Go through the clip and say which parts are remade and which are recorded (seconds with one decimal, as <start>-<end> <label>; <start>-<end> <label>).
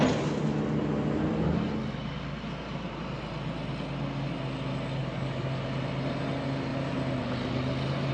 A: 0.0-5.0 recorded; 5.0-5.5 remade; 5.5-8.1 recorded